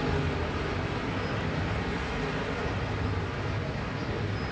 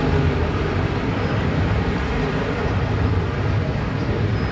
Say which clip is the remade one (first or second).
second